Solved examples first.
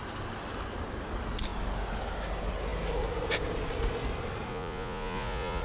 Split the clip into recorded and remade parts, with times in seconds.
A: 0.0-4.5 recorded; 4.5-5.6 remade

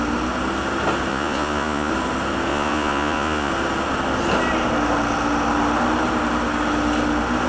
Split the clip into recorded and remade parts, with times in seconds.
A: 0.0-1.1 recorded; 1.1-1.9 remade; 1.9-2.5 recorded; 2.5-3.5 remade; 3.5-7.5 recorded

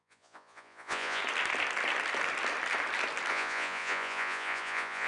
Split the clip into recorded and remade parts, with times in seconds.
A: 0.0-1.2 remade; 1.2-3.3 recorded; 3.3-5.1 remade

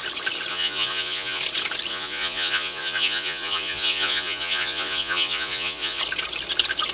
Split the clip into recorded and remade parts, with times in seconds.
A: 0.0-0.5 recorded; 0.5-1.4 remade; 1.4-1.9 recorded; 1.9-6.0 remade; 6.0-6.9 recorded

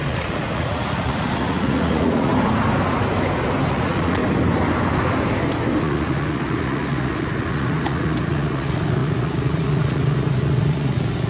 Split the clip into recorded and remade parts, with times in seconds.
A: 0.0-2.3 remade; 2.3-3.7 recorded; 3.7-4.2 remade; 4.2-5.8 recorded; 5.8-11.3 remade

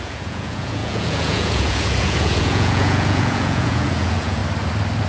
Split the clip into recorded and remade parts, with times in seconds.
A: 0.0-4.4 remade; 4.4-5.1 recorded